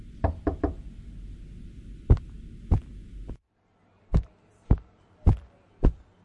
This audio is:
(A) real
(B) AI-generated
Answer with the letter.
A